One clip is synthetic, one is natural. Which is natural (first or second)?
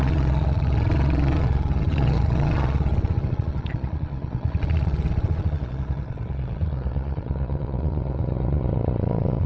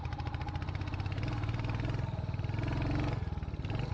second